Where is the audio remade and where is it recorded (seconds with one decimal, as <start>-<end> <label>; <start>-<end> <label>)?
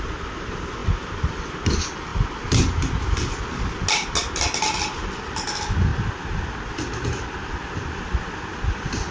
0.0-9.1 recorded